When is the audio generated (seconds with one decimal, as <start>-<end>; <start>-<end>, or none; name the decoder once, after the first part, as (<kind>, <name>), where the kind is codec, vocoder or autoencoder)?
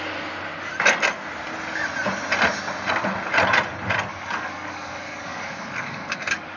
4.1-6.6 (codec, DAC)